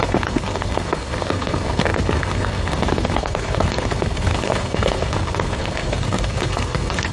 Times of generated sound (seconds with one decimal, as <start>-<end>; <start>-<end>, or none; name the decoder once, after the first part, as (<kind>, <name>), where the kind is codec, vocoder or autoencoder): 0.0-7.1 (codec, SNAC)